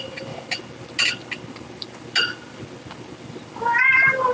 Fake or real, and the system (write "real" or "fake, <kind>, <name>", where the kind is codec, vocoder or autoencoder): real